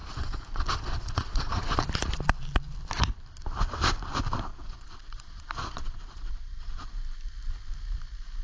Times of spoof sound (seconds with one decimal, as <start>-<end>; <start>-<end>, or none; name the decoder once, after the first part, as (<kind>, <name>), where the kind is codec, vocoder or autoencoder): 0.0-1.8 (vocoder, Vocos); 4.5-6.9